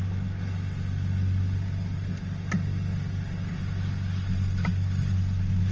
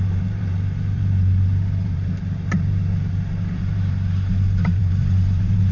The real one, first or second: first